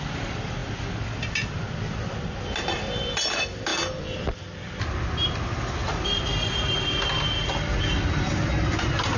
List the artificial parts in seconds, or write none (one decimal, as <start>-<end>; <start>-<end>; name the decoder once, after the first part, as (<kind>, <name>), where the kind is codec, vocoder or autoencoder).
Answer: none